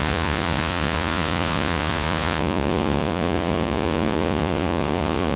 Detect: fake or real fake